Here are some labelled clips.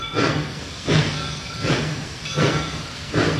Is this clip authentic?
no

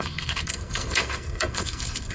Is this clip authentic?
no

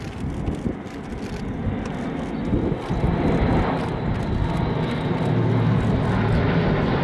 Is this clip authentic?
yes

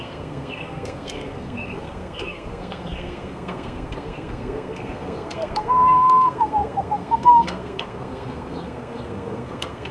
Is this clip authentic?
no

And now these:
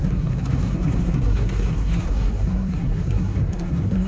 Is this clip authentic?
no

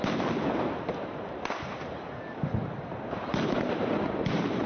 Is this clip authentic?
yes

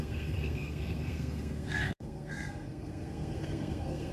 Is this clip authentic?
no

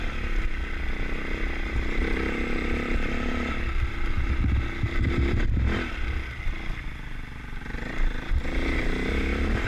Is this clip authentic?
yes